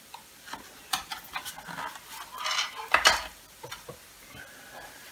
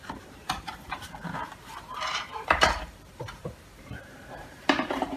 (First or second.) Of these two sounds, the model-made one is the second